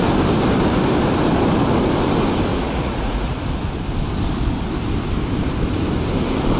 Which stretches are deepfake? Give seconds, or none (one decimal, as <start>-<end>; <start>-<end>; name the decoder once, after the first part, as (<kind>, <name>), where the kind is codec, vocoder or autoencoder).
2.5-3.4 (vocoder, Vocos)